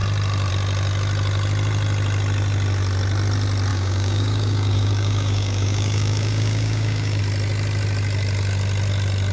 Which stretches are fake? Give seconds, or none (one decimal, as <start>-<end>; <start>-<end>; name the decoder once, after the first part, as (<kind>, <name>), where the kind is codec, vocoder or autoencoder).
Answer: 3.7-7.2 (codec, DAC)